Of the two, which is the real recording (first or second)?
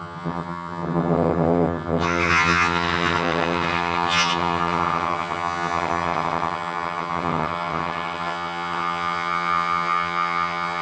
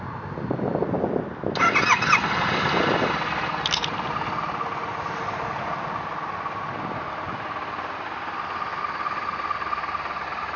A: second